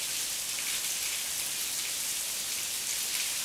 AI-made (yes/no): yes